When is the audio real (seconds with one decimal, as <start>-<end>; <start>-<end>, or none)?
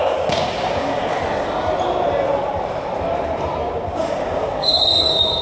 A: 1.1-3.7